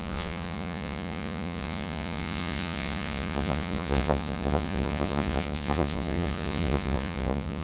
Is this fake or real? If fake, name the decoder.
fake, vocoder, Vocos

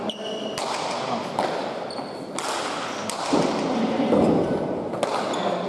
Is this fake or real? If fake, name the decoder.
real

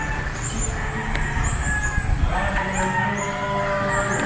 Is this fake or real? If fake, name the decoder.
real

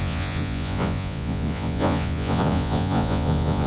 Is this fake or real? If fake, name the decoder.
fake, vocoder, Vocos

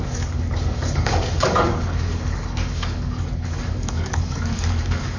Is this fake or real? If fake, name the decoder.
fake, codec, DAC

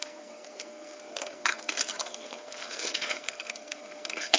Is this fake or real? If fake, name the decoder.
fake, codec, SNAC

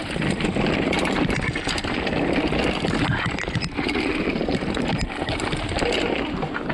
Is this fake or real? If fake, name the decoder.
real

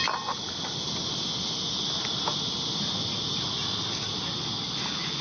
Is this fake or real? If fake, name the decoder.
real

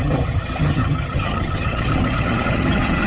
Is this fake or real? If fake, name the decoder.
fake, vocoder, HiFi-GAN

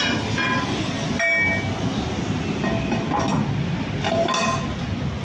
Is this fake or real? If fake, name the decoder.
real